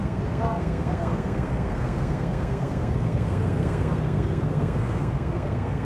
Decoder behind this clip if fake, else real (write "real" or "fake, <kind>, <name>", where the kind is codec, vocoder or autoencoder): fake, codec, SNAC